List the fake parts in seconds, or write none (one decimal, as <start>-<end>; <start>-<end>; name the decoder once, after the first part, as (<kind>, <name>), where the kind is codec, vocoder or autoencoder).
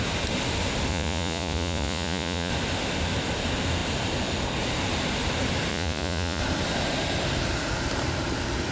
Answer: 0.9-2.5 (vocoder, Vocos); 5.7-6.4